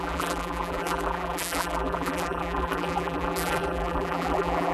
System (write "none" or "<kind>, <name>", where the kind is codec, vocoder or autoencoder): vocoder, BigVGAN v2